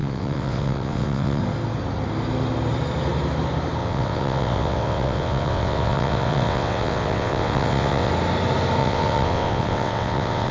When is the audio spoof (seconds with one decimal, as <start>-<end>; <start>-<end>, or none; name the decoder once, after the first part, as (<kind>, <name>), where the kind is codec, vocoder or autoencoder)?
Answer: 0.0-1.4 (vocoder, WaveNeXt); 3.8-8.1; 8.8-10.5